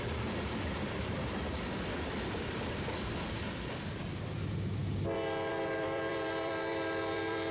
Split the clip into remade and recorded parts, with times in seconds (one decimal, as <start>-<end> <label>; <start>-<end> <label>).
0.0-4.8 remade; 4.8-5.5 recorded; 5.5-7.5 remade